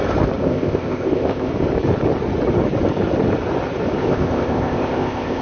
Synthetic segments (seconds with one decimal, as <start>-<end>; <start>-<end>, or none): 0.4-1.5; 4.0-5.4